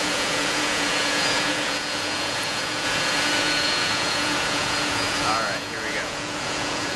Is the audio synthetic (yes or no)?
yes